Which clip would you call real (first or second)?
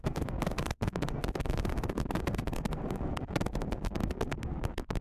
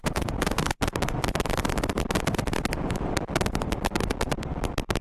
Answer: second